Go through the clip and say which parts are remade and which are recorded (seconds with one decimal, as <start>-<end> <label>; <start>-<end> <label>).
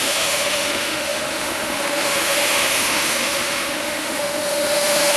0.0-5.2 remade